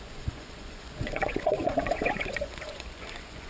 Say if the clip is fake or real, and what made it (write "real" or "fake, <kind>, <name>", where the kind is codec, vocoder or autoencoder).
fake, vocoder, Vocos